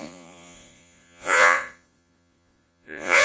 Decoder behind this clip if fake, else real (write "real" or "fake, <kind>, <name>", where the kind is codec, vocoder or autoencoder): fake, vocoder, Vocos